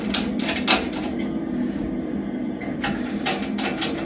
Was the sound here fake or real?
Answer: real